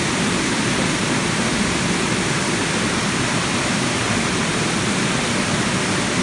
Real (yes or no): no